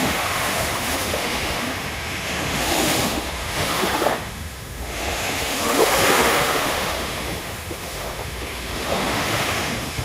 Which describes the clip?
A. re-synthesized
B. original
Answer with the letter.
A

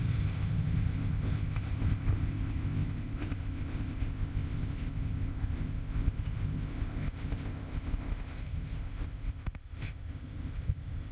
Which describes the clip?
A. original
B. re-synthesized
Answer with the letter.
B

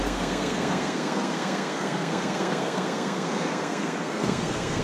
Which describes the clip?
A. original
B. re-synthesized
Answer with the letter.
B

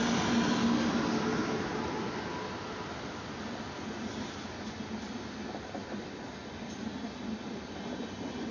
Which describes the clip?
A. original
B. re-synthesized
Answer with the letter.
A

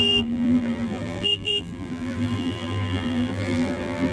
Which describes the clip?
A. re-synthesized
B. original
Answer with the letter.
A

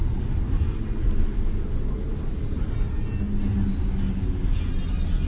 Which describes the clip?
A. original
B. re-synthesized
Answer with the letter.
A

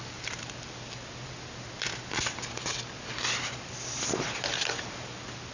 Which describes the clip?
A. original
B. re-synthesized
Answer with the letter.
A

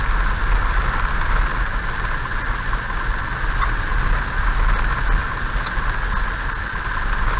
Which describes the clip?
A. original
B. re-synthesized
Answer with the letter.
A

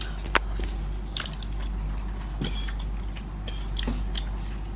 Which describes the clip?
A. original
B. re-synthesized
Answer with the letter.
A